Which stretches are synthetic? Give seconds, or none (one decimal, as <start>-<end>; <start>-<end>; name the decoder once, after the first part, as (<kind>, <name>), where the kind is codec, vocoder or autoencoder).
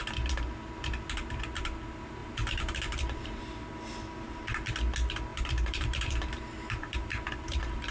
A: 2.2-3.4 (vocoder, BigVGAN v2); 5.3-7.9